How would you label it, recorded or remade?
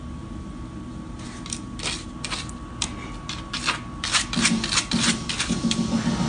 recorded